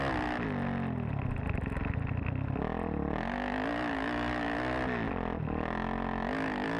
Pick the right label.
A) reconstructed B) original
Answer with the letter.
B